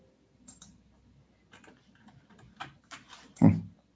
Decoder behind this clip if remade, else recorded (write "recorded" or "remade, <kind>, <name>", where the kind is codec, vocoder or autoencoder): recorded